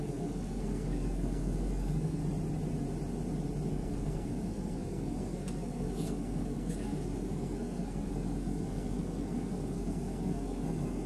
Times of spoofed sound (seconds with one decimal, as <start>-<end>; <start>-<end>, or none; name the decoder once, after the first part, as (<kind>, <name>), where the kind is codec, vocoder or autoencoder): 0.0-2.2 (codec, SNAC); 3.7-11.1